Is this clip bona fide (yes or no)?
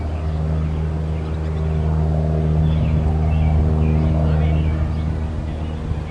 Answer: yes